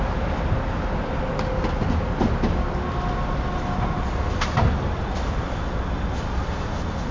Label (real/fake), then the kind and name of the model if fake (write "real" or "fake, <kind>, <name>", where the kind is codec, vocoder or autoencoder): real